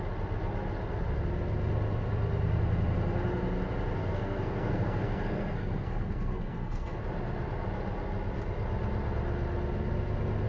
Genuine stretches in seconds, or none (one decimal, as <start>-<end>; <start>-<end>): 0.0-4.0; 7.0-10.5